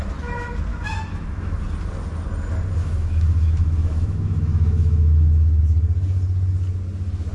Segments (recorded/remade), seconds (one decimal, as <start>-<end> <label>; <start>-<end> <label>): 0.0-0.7 recorded; 0.7-1.6 remade; 1.6-2.8 recorded; 2.8-5.6 remade; 5.6-7.3 recorded